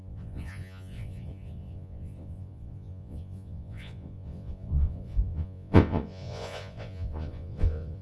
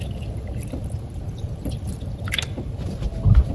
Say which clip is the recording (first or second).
second